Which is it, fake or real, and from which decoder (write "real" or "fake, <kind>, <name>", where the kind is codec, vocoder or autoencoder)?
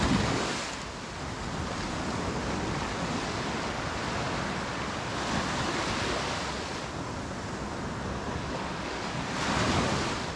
real